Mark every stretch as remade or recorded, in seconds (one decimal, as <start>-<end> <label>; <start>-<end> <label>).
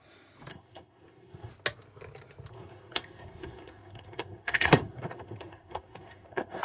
0.0-0.5 recorded; 0.5-1.5 remade; 1.5-2.5 recorded; 2.5-6.6 remade